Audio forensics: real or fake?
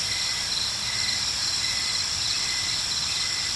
real